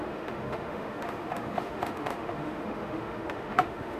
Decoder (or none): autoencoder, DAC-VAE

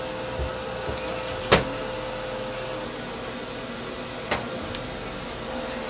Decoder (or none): none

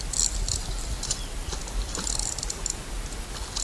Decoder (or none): none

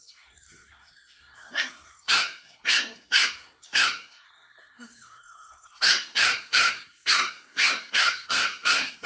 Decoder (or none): codec, SNAC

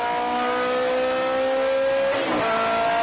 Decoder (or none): none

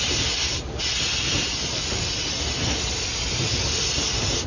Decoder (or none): none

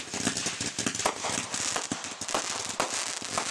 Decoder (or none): none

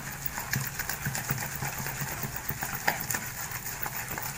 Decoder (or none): none